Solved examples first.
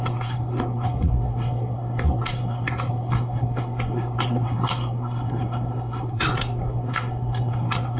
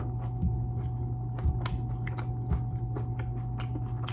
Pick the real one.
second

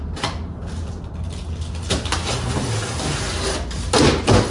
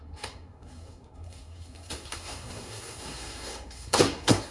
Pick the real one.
first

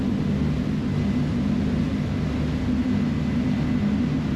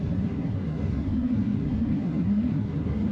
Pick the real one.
first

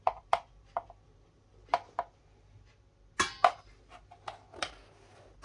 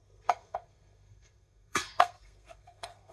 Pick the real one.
first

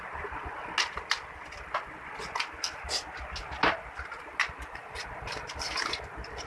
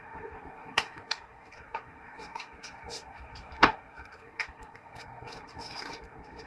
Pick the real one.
first